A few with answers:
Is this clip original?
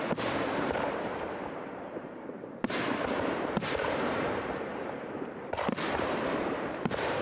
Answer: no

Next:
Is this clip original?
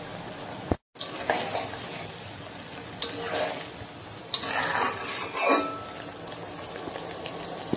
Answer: yes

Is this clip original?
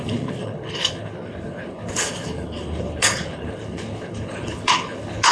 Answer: no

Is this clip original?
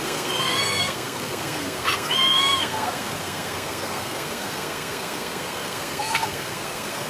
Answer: no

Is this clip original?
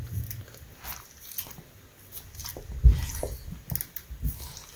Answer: yes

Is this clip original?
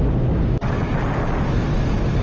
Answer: yes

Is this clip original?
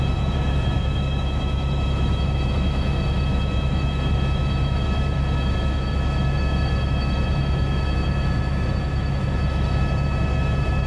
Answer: no